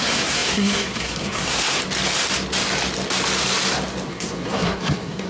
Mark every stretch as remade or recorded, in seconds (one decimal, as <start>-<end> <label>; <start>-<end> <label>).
0.0-1.8 remade; 1.8-4.1 recorded; 4.1-5.3 remade